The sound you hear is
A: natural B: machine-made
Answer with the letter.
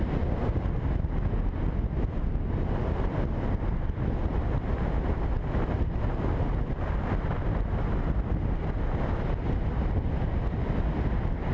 A